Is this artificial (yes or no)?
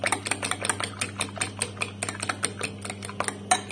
no